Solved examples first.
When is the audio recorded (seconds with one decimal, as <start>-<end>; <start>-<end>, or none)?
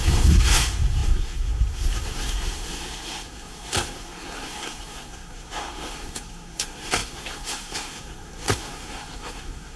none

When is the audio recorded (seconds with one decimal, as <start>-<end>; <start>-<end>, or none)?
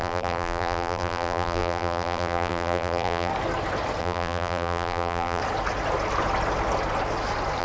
3.3-4.0; 5.4-7.6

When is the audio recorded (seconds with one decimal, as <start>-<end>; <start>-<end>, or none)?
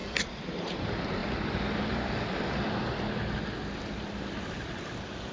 1.2-4.4